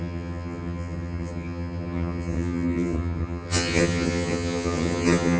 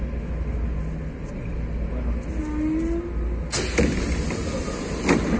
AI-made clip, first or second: first